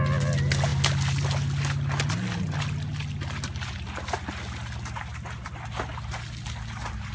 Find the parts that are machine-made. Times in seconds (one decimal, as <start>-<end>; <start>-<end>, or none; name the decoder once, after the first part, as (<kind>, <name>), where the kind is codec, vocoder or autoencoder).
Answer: none